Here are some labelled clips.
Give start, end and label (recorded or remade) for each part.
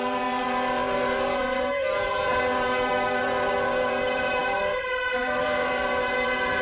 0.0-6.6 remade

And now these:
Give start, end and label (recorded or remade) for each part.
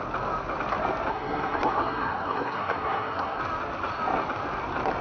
0.0-1.1 recorded; 1.1-3.4 remade; 3.4-5.0 recorded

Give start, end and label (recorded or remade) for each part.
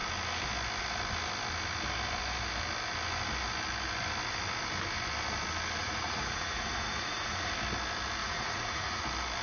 0.0-5.8 recorded; 5.8-7.5 remade; 7.5-8.2 recorded; 8.2-9.0 remade; 9.0-9.4 recorded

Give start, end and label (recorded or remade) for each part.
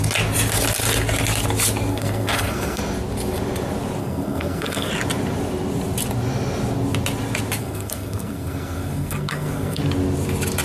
0.0-1.9 recorded; 1.9-2.8 remade; 2.8-4.0 recorded; 4.0-4.9 remade; 4.9-7.6 recorded; 7.6-9.8 remade; 9.8-10.6 recorded